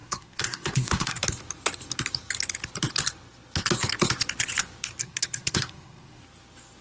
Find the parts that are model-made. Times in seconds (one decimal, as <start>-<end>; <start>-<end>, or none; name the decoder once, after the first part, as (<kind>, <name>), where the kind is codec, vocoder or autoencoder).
0.0-1.2 (codec, SNAC); 5.0-6.2